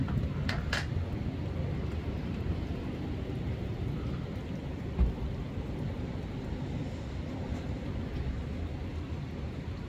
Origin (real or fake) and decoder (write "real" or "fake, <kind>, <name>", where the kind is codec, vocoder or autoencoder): real